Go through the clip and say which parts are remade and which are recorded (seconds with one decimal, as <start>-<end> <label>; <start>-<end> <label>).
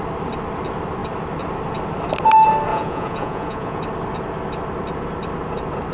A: 0.0-2.7 recorded; 2.7-3.8 remade; 3.8-5.9 recorded